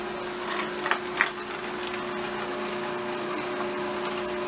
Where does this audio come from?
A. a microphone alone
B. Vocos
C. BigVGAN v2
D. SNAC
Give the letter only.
A